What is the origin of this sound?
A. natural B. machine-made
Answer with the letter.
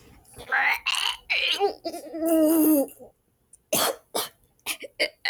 A